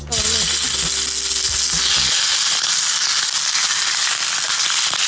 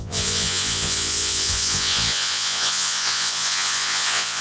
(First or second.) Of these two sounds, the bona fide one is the first